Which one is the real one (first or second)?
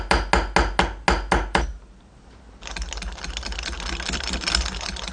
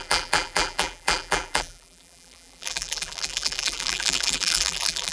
first